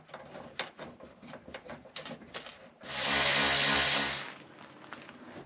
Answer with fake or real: real